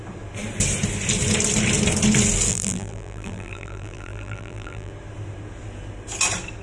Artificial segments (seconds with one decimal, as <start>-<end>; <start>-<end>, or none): 2.5-4.9